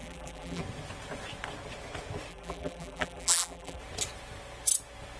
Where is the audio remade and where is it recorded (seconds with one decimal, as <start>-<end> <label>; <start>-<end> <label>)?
0.0-0.6 remade; 0.6-2.3 recorded; 2.3-3.8 remade; 3.8-5.2 recorded